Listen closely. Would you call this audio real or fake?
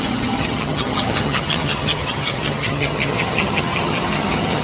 fake